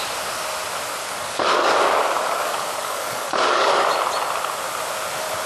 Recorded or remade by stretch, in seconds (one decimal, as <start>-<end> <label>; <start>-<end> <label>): 0.0-1.0 recorded; 1.0-3.9 remade; 3.9-5.5 recorded